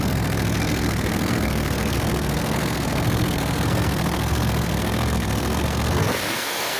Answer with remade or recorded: remade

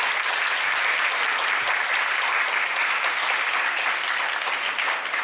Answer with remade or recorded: recorded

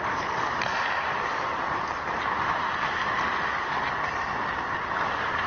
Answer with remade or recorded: recorded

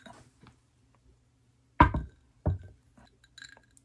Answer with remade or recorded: recorded